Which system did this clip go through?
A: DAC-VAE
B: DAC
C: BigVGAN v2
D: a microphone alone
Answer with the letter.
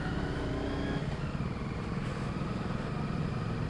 D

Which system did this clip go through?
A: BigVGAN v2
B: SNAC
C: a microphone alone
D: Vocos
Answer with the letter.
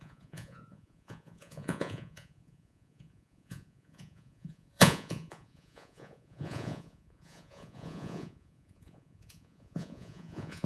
D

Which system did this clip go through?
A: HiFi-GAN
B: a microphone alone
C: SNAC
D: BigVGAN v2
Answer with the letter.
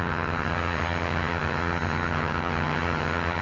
A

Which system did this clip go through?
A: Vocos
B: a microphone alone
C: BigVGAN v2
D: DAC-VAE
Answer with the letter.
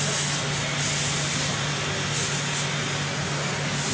B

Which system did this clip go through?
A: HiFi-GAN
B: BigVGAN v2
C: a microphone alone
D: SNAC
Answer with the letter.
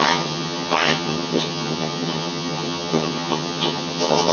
A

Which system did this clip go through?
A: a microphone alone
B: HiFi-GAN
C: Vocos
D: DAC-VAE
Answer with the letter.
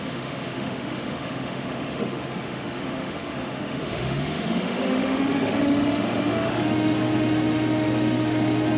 D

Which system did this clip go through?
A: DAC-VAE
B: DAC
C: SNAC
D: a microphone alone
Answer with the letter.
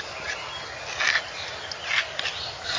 D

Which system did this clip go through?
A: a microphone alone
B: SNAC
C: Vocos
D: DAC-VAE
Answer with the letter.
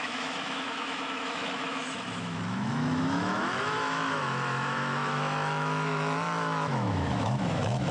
D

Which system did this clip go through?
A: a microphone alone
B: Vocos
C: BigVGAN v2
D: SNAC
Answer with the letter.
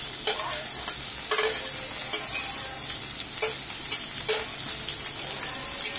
A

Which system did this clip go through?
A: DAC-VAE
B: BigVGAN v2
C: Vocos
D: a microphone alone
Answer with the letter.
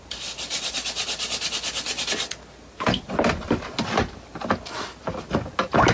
D